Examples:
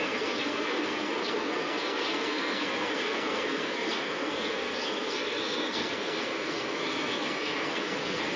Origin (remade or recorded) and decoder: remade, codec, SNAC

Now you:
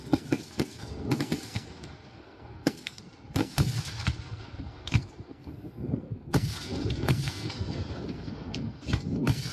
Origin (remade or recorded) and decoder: remade, codec, SNAC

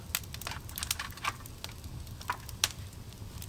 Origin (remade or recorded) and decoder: recorded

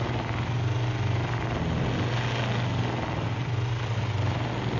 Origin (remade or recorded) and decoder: recorded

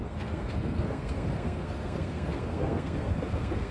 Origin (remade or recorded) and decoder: remade, codec, SNAC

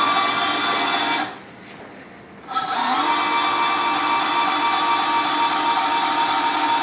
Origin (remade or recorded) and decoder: recorded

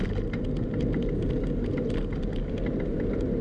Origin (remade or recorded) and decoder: recorded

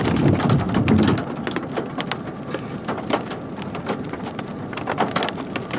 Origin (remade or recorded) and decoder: recorded